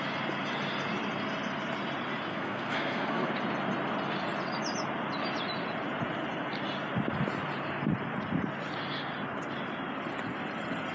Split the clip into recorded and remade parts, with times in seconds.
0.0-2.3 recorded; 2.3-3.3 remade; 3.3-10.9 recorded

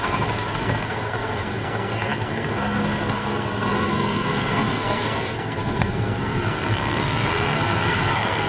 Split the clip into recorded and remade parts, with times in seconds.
0.0-8.5 remade

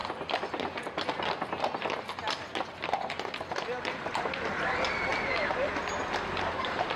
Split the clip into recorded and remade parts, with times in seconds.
0.0-7.0 recorded

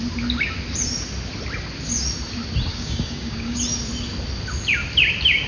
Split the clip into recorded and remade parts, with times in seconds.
0.0-2.7 recorded; 2.7-3.6 remade; 3.6-5.5 recorded